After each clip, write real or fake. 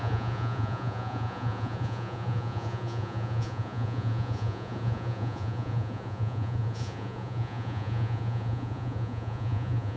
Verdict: fake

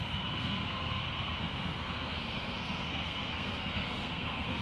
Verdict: fake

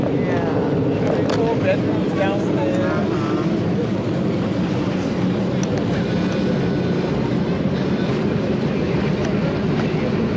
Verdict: real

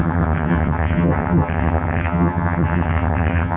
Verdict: fake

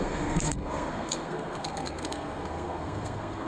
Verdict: fake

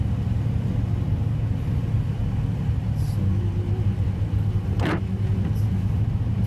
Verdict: real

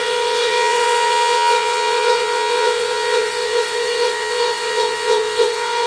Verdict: fake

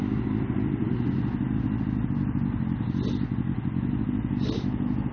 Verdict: real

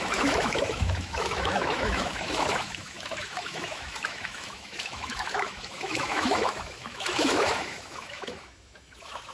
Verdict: fake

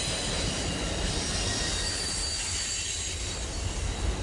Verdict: real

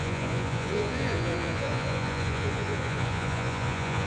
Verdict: fake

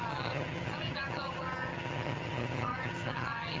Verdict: fake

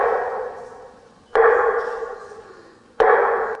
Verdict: fake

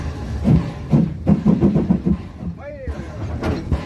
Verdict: fake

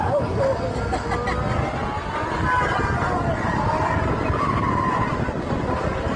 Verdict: real